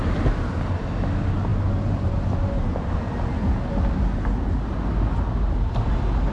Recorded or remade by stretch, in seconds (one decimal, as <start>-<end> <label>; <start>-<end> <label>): 0.0-6.3 recorded